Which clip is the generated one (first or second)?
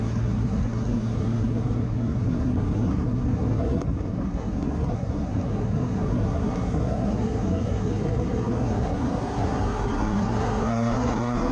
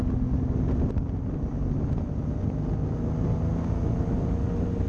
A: first